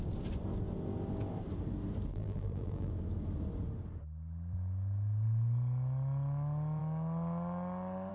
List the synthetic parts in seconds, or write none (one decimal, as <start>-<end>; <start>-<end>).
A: 2.1-2.9